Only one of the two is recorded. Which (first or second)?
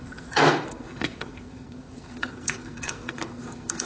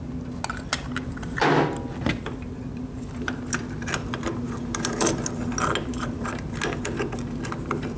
second